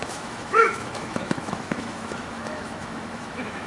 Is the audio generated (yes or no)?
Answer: yes